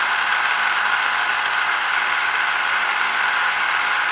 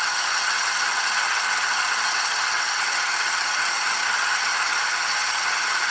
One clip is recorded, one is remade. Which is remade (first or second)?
second